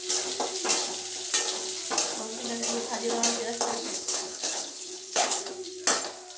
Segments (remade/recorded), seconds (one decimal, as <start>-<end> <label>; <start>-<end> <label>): 0.0-3.7 recorded; 3.7-5.5 remade; 5.5-6.4 recorded